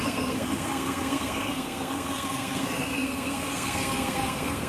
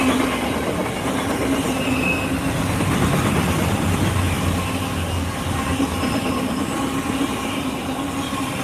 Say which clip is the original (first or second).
second